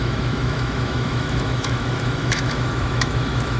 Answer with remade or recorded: remade